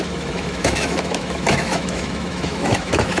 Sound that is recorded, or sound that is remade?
remade